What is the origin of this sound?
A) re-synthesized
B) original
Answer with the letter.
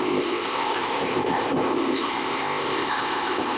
A